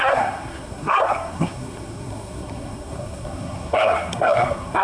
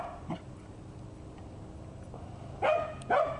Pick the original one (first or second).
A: second